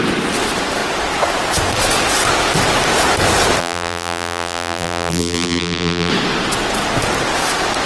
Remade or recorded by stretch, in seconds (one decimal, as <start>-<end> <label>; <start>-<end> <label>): 0.0-3.6 recorded; 3.6-6.1 remade; 6.1-7.9 recorded